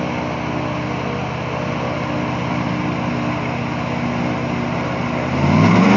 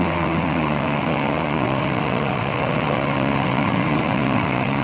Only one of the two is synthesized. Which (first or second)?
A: second